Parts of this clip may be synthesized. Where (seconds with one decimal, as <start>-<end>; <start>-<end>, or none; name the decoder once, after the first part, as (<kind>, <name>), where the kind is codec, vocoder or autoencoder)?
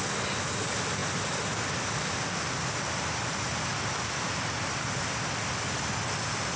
none